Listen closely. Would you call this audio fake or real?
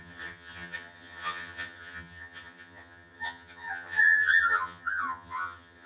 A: fake